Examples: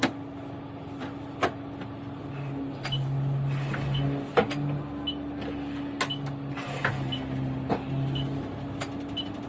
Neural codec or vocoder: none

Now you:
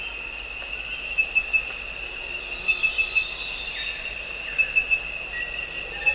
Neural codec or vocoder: none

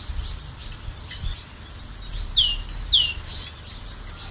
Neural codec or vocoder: none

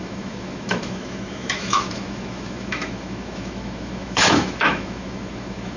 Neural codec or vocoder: autoencoder, DAC-VAE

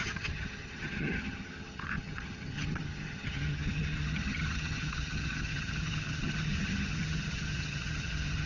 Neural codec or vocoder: vocoder, HiFi-GAN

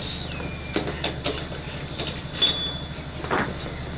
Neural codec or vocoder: none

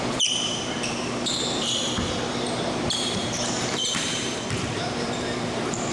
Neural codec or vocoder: vocoder, BigVGAN v2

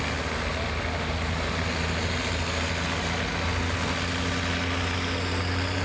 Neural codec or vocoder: none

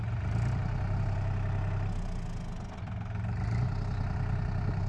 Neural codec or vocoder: none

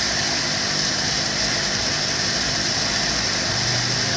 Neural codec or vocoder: none